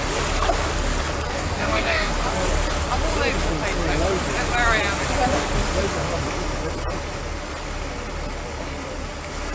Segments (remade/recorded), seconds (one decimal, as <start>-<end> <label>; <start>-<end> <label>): 0.0-1.3 recorded; 1.3-2.1 remade; 2.1-9.5 recorded